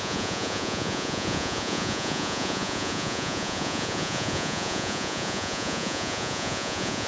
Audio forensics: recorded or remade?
remade